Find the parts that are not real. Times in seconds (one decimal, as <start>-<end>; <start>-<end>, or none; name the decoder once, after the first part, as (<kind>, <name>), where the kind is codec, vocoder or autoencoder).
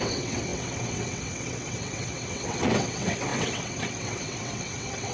0.0-5.1 (vocoder, WaveNeXt)